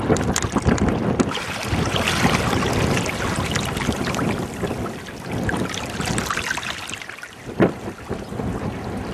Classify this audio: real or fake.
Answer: real